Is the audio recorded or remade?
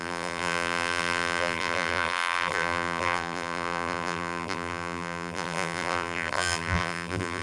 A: remade